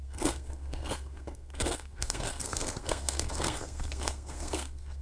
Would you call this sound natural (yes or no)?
no